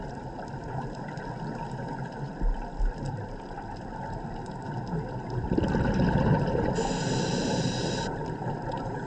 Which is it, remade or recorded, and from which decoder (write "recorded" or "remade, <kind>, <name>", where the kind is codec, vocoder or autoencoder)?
recorded